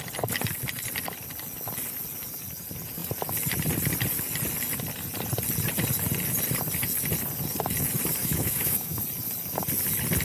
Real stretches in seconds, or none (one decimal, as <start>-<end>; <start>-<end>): 0.0-8.2; 9.0-10.2